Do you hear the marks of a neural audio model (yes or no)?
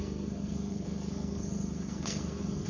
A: yes